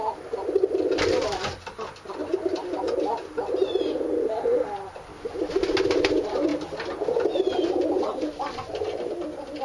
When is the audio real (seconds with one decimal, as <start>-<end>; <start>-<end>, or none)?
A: 0.0-9.6